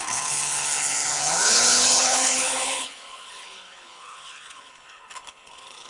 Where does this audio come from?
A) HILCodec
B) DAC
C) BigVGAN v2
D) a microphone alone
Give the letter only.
A